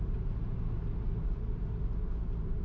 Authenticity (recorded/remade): recorded